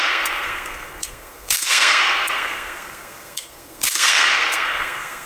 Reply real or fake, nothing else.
fake